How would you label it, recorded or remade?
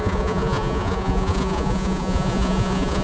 remade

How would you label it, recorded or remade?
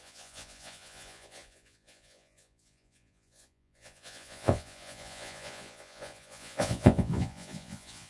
remade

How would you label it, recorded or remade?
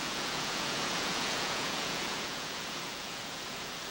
remade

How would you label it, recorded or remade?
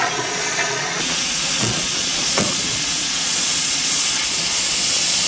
remade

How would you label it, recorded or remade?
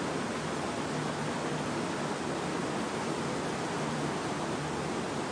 recorded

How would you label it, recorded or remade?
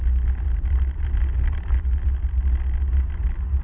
recorded